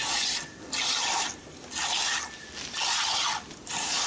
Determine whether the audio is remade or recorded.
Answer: recorded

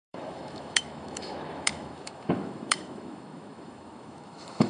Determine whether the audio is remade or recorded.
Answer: remade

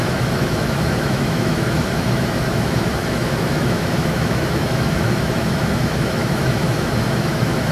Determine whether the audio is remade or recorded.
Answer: remade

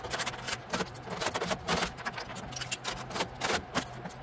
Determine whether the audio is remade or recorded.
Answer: recorded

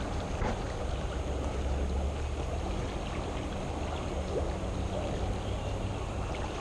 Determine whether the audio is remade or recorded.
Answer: recorded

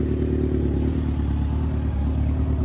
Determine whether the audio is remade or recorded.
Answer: recorded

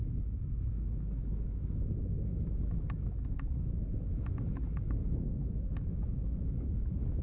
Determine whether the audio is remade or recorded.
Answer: remade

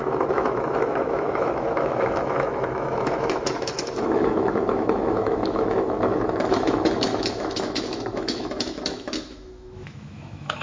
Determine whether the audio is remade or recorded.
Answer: remade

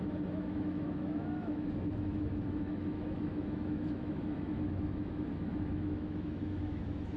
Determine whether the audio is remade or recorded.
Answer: remade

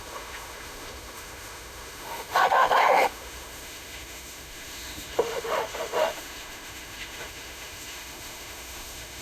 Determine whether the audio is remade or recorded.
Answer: remade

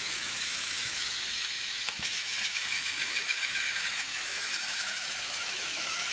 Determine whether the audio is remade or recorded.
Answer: remade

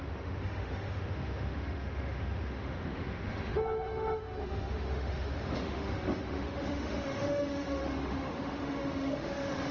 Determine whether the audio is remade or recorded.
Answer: remade